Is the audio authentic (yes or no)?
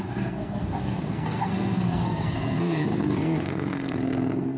no